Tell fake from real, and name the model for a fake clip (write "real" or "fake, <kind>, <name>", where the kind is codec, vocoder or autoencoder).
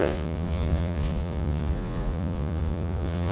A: fake, vocoder, Vocos